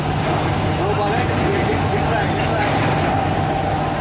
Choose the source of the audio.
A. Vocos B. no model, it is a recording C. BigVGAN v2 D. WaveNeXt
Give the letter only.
B